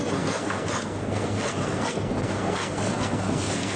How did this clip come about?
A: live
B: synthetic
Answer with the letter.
B